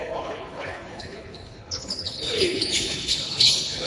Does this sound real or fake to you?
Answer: fake